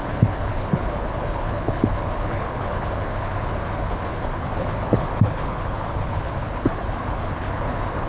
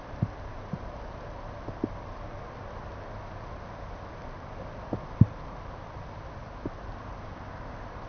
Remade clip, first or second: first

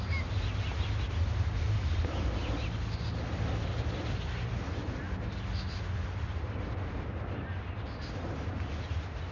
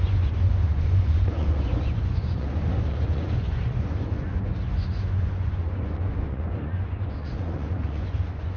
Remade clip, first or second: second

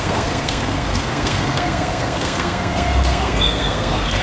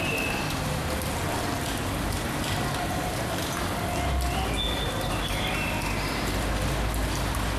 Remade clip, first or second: first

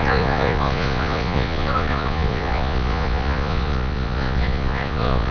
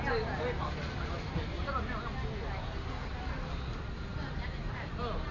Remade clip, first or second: first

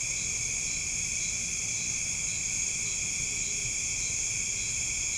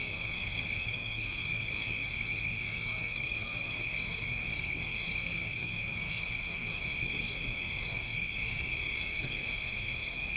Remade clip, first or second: second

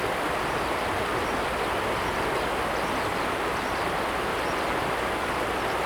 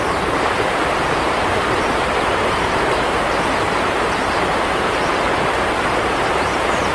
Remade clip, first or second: second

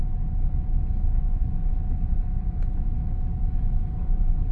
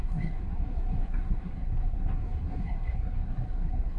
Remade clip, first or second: second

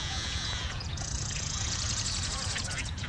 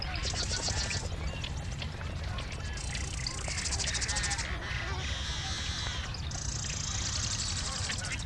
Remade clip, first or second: first